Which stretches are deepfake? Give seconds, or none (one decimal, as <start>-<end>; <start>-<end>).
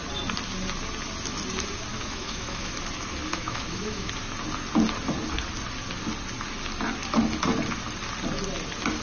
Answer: 1.9-2.7; 3.3-4.1